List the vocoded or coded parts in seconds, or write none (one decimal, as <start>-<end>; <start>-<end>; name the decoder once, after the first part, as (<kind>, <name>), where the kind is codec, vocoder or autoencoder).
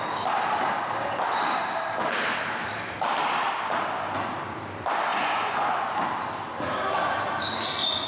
5.1-5.9 (vocoder, Vocos)